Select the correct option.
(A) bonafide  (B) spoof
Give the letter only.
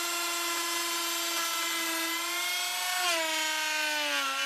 A